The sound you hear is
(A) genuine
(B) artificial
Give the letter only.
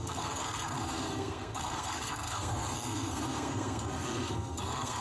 B